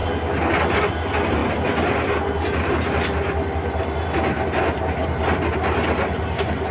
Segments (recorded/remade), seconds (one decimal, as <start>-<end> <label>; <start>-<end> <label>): 0.0-6.7 recorded